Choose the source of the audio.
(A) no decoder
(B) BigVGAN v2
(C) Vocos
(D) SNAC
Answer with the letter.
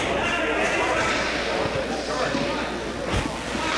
A